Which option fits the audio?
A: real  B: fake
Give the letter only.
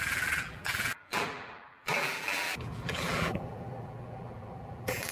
B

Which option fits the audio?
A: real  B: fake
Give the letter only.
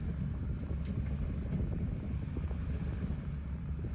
A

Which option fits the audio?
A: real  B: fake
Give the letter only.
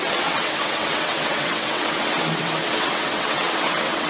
B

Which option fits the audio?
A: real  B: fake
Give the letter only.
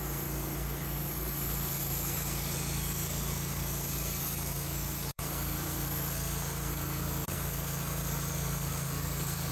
B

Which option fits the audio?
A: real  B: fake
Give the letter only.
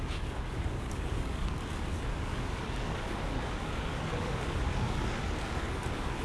B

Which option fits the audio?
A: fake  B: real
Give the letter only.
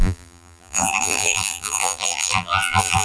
A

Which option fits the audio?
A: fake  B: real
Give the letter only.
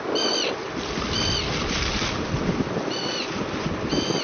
B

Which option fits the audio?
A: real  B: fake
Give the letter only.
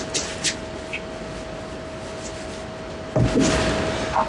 A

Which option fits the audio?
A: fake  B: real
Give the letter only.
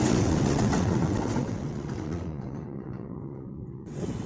A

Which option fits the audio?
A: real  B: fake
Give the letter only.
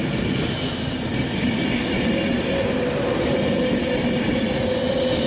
A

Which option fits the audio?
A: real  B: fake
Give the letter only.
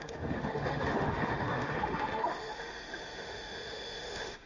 B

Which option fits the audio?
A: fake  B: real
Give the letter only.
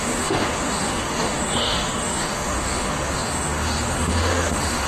A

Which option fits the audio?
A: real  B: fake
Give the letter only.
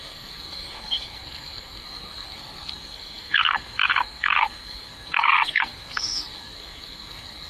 B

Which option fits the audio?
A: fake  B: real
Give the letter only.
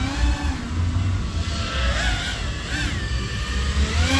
B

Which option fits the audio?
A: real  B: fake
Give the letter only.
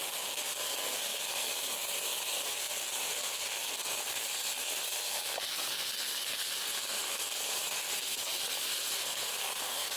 B